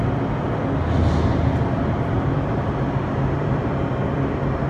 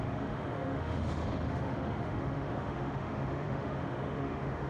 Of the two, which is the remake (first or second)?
second